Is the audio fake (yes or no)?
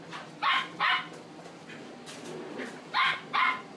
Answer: no